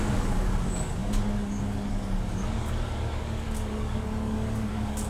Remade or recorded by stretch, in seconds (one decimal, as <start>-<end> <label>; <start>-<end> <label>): 0.0-5.1 remade